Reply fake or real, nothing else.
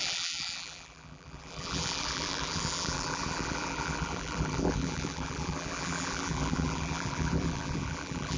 fake